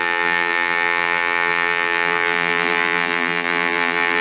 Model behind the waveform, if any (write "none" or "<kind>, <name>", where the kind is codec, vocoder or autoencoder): vocoder, BigVGAN v2